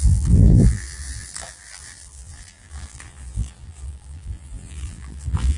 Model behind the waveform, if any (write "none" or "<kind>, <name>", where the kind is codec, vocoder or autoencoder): vocoder, BigVGAN v2